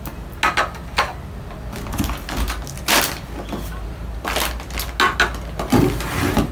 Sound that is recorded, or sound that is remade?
recorded